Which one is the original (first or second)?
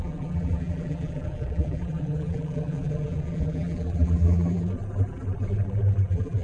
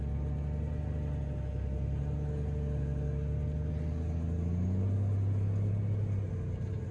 second